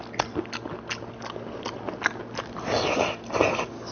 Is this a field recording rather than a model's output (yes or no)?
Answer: yes